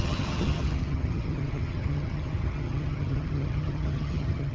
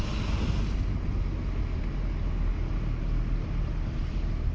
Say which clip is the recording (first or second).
second